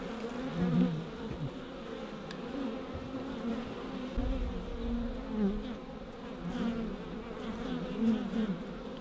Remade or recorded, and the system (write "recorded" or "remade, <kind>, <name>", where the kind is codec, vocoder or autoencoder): recorded